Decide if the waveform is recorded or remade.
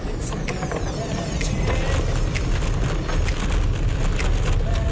recorded